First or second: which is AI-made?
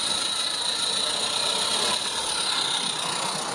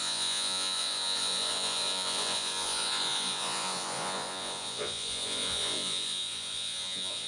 second